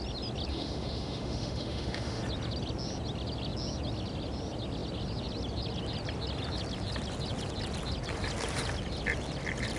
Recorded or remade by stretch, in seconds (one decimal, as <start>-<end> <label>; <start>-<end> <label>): 0.0-0.5 recorded; 0.5-2.2 remade; 2.2-9.8 recorded